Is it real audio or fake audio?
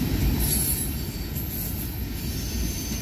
real